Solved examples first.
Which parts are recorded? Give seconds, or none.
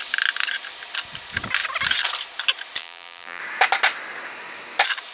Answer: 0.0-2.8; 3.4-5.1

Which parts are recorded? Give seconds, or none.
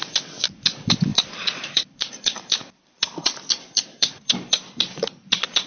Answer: 0.0-1.1; 4.5-5.7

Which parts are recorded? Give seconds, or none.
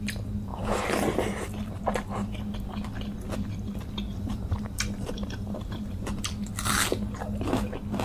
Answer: 0.0-0.5; 2.4-4.1; 6.2-8.0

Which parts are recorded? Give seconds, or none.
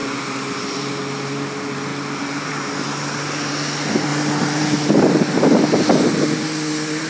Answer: 0.9-1.9; 2.5-4.1; 4.9-7.1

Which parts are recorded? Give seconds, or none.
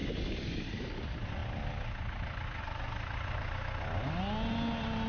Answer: 0.8-5.1